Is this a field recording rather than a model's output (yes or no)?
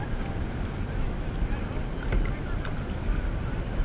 yes